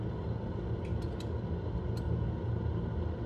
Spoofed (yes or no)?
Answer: no